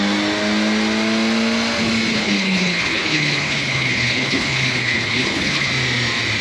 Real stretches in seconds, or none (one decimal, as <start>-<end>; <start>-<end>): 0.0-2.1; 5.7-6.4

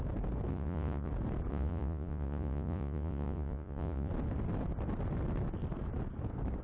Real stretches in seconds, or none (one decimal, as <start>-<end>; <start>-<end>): 0.0-0.5; 1.1-1.5; 4.1-6.6

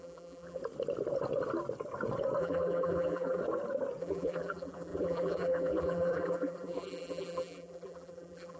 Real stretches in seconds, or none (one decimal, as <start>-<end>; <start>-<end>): 0.6-2.4; 3.4-4.0